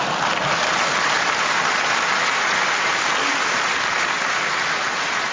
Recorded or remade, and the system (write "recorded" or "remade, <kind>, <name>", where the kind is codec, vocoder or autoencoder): recorded